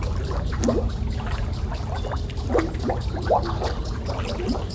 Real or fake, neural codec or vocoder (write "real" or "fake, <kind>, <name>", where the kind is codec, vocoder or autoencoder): real